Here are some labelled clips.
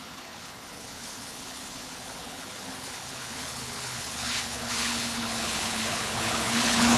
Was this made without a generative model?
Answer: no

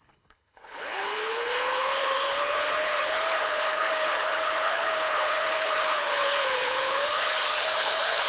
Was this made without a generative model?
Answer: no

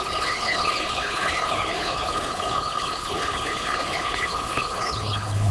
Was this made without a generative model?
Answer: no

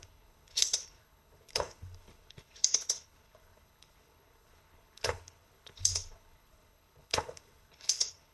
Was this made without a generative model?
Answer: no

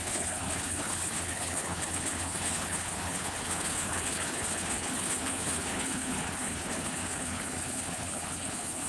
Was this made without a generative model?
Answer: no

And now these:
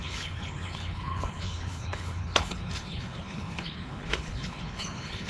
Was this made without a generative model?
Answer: no